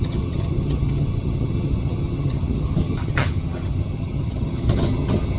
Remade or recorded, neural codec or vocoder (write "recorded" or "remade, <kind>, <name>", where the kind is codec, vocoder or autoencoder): remade, vocoder, HiFi-GAN